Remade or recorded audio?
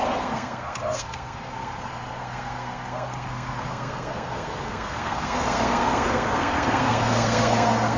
remade